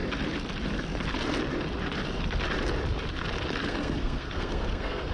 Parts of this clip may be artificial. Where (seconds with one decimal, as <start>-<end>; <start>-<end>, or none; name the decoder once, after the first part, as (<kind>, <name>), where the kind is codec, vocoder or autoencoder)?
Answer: 3.6-5.1 (codec, SNAC)